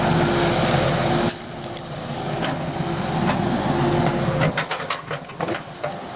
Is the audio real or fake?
real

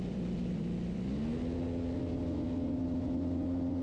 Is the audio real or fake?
real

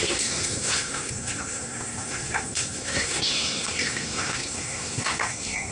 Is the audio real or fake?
fake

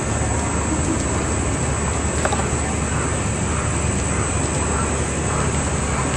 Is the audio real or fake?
real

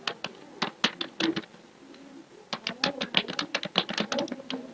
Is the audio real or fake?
real